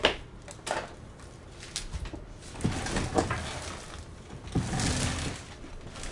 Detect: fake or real real